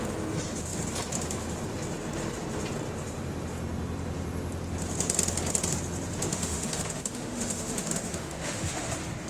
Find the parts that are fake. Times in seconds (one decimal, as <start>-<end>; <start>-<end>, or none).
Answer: 6.3-8.9